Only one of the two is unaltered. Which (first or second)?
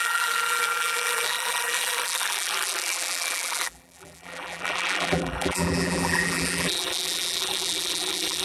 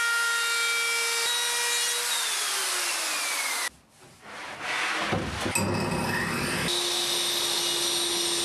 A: second